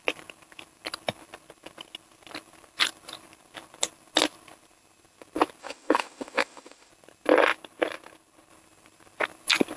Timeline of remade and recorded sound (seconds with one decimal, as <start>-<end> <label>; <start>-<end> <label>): 0.0-5.6 recorded; 5.6-6.9 remade; 6.9-9.8 recorded